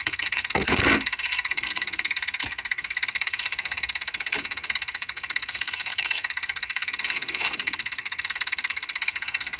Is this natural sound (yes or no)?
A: no